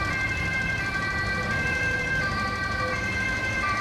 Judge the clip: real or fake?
real